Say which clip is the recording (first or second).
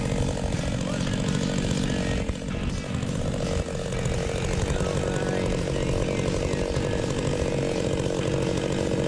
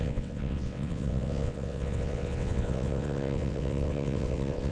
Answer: first